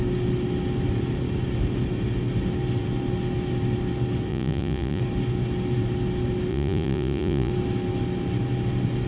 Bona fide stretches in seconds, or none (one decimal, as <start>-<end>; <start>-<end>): 0.0-4.3; 5.0-6.5; 7.5-9.1